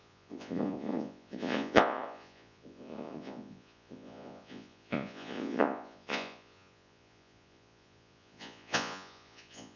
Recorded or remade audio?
remade